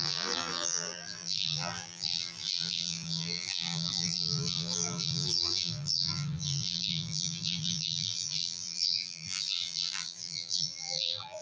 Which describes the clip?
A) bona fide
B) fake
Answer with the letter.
B